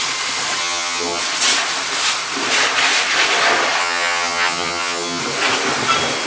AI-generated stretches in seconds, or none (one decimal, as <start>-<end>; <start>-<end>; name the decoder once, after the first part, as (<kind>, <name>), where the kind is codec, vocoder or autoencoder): 0.6-1.2 (vocoder, HiFi-GAN); 3.8-5.2